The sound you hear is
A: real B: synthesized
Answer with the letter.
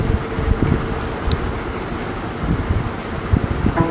A